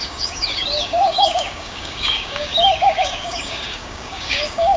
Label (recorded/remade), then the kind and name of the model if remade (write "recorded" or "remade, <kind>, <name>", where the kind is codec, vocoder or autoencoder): remade, codec, DAC